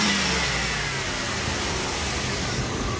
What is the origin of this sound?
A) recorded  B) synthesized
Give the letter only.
A